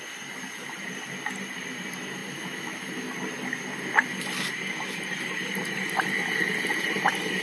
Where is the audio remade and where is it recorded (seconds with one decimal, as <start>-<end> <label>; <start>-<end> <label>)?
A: 0.0-2.2 recorded; 2.2-2.9 remade; 2.9-7.4 recorded

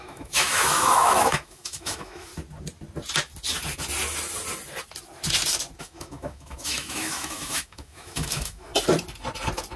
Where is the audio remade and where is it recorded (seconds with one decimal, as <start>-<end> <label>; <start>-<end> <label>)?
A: 0.0-2.3 remade; 2.3-5.8 recorded; 5.8-8.7 remade; 8.7-9.8 recorded

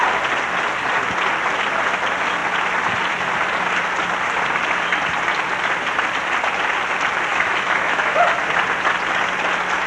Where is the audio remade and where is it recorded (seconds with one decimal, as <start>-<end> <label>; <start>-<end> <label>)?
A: 0.0-7.3 recorded; 7.3-8.2 remade; 8.2-9.9 recorded